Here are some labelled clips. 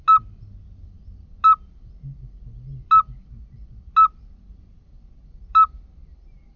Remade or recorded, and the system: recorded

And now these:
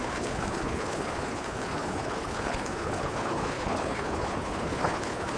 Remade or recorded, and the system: remade, codec, HILCodec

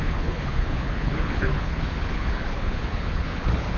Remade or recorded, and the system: remade, codec, HILCodec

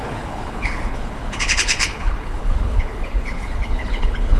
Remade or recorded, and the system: remade, codec, HILCodec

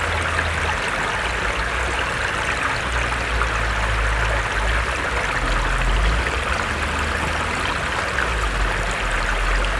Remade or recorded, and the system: recorded